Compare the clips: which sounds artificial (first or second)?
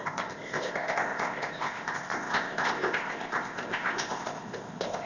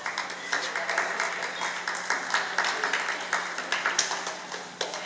first